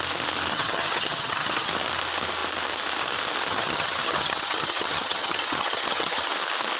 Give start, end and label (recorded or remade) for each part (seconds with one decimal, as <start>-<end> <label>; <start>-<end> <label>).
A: 0.0-0.5 recorded; 0.5-1.7 remade; 1.7-3.5 recorded; 3.5-6.3 remade; 6.3-6.8 recorded